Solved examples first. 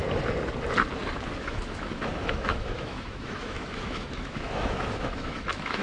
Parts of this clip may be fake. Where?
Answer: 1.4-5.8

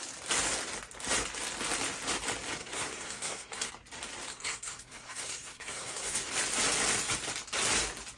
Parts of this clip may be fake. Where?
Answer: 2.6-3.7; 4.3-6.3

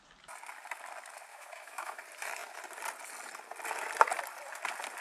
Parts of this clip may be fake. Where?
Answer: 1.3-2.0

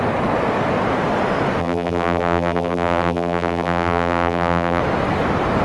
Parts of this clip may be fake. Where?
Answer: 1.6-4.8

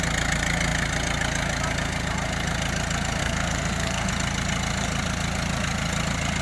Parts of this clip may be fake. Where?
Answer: 3.2-4.1

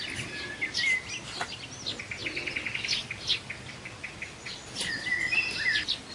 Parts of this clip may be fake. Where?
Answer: none